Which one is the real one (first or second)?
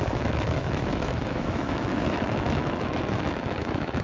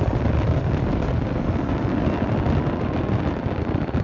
second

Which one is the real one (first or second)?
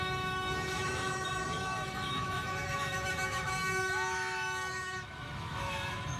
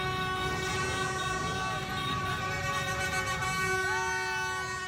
second